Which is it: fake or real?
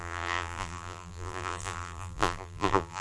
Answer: fake